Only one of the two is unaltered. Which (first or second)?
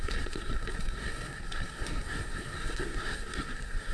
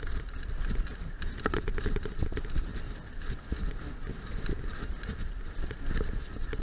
second